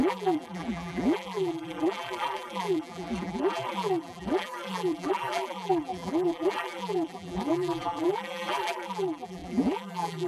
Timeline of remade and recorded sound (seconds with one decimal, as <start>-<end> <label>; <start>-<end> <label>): 0.0-10.3 remade

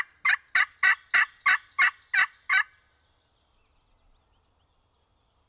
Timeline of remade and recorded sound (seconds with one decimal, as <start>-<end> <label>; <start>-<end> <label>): 0.0-5.5 recorded

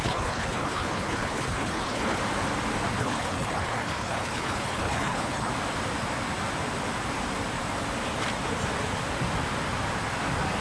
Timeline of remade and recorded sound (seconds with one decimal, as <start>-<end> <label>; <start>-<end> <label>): 0.0-2.2 remade; 2.2-3.0 recorded; 3.0-5.5 remade; 5.5-10.6 recorded

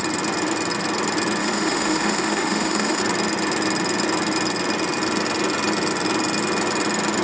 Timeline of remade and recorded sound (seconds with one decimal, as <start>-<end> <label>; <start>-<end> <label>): 0.0-1.4 recorded; 1.4-3.0 remade; 3.0-7.2 recorded

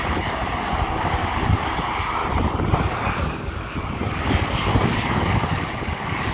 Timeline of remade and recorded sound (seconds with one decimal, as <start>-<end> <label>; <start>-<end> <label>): 0.0-2.2 remade; 2.2-2.8 recorded; 2.8-6.3 remade

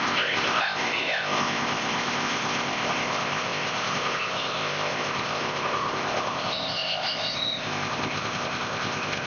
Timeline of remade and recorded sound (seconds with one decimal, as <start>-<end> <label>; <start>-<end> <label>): 0.0-9.3 remade

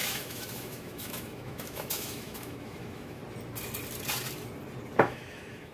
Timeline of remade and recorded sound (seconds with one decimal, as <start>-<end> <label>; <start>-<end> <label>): 0.0-3.2 remade; 3.2-5.0 recorded; 5.0-5.7 remade

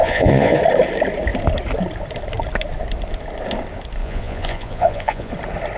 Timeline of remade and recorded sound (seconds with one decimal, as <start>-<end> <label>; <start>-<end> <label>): 0.0-0.6 remade; 0.6-4.0 recorded; 4.0-5.3 remade; 5.3-5.8 recorded